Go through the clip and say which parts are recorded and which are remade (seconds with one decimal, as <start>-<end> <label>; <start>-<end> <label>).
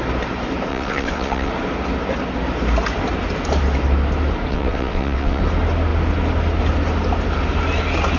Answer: 0.0-0.7 recorded; 0.7-1.5 remade; 1.5-4.5 recorded; 4.5-5.4 remade; 5.4-8.2 recorded